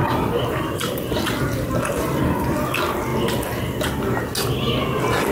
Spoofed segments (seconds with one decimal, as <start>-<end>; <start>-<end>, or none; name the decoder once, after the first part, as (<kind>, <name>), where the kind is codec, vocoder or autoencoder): 0.0-2.5 (vocoder, BigVGAN v2)